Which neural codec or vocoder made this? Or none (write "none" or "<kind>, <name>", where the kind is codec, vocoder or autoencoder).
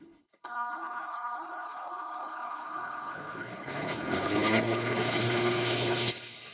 codec, HILCodec